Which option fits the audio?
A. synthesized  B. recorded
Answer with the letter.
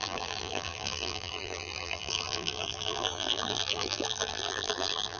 A